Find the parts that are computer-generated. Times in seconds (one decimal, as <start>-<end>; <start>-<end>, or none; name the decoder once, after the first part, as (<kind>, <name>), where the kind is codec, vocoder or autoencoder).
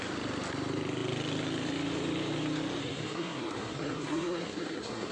2.8-5.1 (codec, SNAC)